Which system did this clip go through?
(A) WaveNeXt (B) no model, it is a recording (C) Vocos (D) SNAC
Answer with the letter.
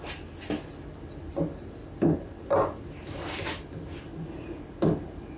B